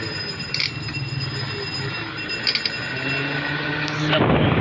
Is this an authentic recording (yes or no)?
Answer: yes